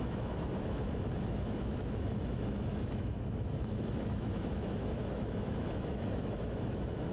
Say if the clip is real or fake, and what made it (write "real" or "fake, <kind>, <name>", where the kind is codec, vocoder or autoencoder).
fake, autoencoder, DAC-VAE